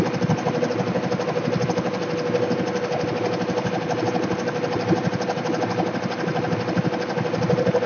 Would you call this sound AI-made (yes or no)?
no